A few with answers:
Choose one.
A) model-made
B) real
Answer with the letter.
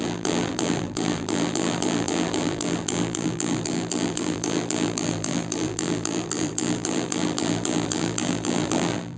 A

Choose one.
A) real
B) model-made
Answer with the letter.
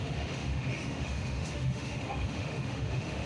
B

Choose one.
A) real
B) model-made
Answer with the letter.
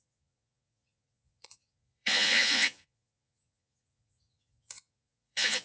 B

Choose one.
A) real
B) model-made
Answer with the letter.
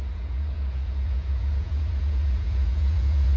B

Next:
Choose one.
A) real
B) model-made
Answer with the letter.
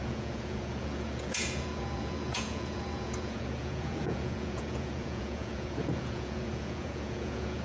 B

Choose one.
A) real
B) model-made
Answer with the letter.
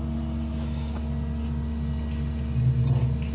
A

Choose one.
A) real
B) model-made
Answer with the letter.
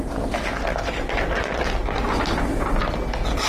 A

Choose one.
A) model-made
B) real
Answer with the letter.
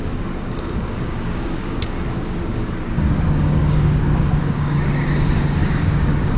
A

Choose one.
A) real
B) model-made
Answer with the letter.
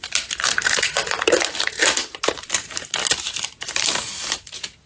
B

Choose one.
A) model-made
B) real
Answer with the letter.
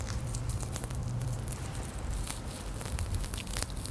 A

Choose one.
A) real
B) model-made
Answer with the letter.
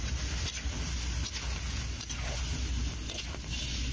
A